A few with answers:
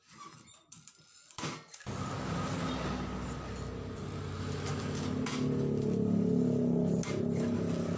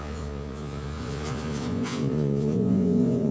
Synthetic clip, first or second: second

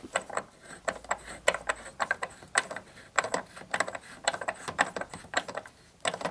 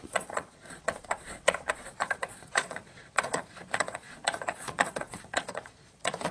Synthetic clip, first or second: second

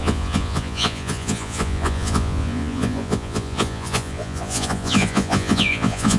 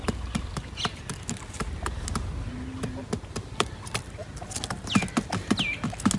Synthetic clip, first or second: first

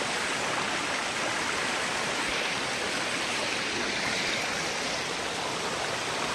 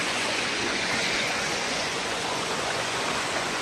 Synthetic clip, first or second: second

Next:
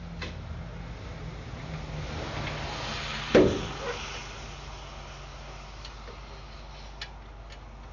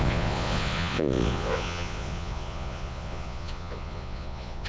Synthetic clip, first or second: second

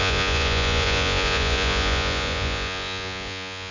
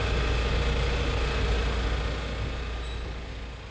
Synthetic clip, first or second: first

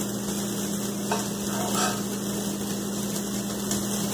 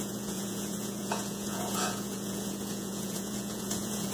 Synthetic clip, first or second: second